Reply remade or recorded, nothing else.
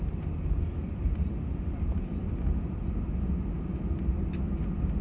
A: recorded